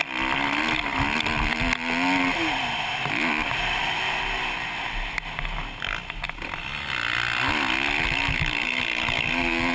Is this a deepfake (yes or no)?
no